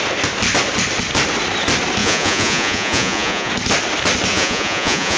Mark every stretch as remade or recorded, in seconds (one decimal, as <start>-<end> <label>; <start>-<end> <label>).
0.0-2.0 recorded; 2.0-3.5 remade; 3.5-4.3 recorded; 4.3-5.2 remade